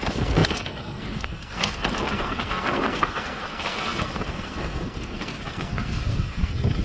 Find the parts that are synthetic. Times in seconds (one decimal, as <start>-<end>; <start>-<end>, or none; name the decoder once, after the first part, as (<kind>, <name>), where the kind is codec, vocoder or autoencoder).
0.0-6.8 (codec, SNAC)